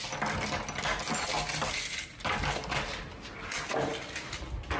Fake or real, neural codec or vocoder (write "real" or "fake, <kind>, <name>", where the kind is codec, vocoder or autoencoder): real